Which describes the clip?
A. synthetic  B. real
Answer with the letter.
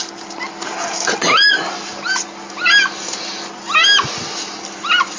B